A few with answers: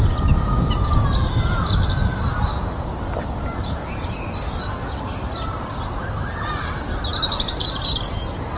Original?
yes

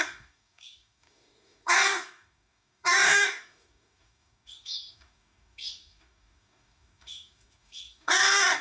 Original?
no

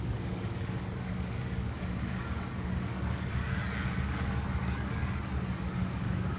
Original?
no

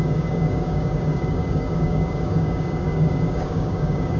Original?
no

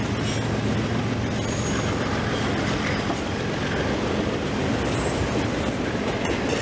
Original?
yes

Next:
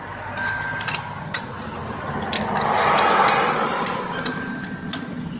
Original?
yes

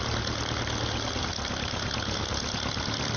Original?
yes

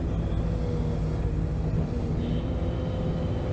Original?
yes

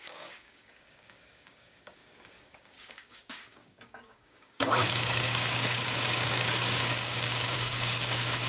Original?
no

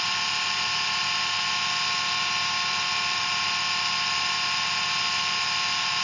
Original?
yes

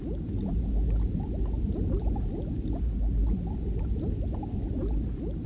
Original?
yes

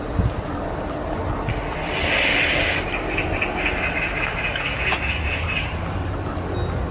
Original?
yes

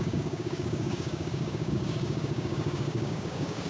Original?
no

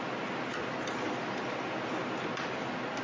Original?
yes